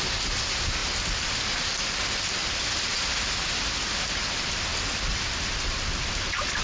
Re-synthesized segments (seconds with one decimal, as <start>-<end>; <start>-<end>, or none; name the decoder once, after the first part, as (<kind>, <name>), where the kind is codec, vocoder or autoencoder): none